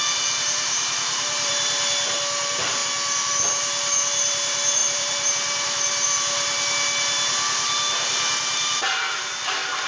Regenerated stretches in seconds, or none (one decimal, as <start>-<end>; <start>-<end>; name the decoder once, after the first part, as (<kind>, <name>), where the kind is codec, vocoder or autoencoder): 0.0-2.8 (vocoder, BigVGAN v2); 3.3-9.9